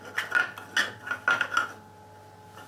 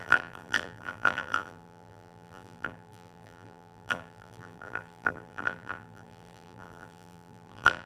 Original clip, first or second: first